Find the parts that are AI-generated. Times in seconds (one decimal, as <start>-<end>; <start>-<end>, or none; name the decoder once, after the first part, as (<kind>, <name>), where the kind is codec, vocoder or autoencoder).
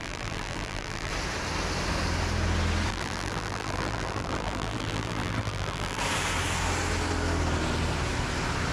0.0-1.1 (vocoder, BigVGAN v2); 2.9-6.0